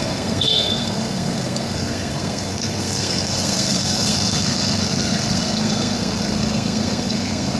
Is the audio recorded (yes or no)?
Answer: no